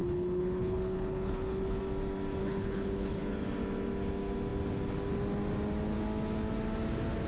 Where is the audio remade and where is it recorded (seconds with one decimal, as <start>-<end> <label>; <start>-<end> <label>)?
0.0-1.8 remade; 1.8-2.4 recorded; 2.4-3.3 remade; 3.3-7.3 recorded